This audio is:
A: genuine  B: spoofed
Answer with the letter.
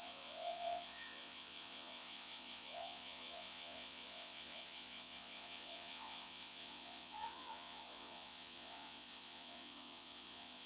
B